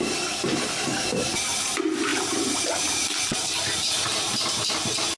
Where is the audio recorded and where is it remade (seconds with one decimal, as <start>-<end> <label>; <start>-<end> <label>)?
0.0-0.9 recorded; 0.9-1.6 remade; 1.6-2.1 recorded; 2.1-5.2 remade